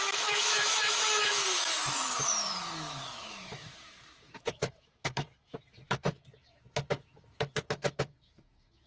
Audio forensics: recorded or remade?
remade